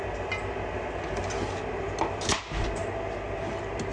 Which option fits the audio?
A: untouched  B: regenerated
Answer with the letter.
A